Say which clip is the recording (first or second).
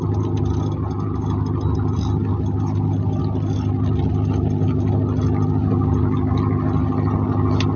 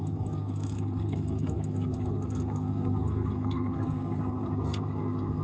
first